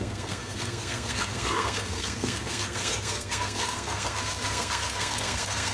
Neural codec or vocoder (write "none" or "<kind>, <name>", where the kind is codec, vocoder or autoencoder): codec, SNAC